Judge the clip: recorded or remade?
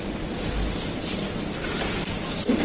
recorded